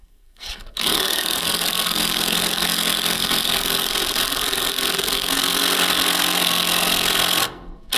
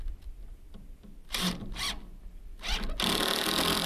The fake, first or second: first